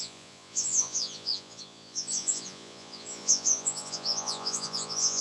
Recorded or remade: remade